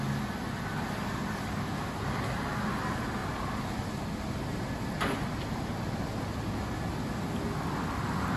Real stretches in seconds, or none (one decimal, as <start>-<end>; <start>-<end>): 0.0-8.4